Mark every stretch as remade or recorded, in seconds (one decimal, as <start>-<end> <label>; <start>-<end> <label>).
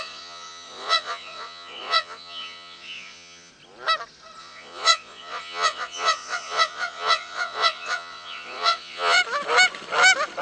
0.0-3.5 remade; 3.5-4.4 recorded; 4.4-9.2 remade; 9.2-10.4 recorded